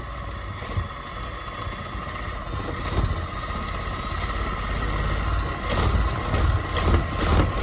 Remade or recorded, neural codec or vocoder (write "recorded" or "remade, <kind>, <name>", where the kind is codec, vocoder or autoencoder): recorded